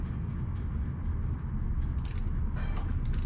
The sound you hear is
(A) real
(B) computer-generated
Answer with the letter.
A